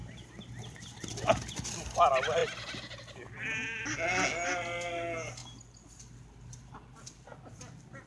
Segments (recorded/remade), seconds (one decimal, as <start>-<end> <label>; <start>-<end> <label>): 0.0-8.1 recorded